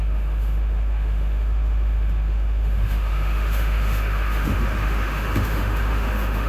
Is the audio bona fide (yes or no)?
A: no